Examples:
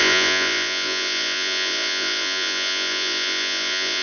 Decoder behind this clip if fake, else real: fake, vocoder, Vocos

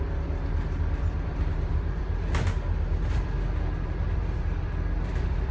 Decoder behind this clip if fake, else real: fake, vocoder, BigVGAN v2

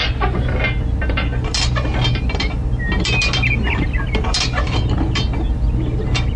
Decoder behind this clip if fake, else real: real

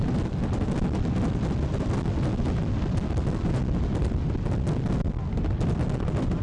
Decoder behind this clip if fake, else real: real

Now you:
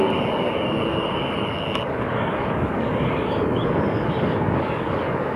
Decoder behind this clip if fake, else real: fake, codec, DAC